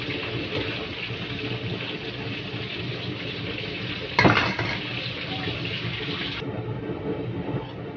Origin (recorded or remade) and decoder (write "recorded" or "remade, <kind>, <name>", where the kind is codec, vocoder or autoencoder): remade, vocoder, BigVGAN v2